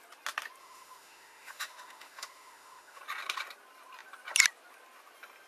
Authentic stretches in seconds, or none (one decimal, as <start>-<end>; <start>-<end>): 0.0-0.6; 3.0-5.5